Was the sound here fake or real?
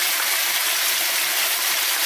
fake